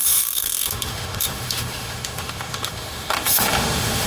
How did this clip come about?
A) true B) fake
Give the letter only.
B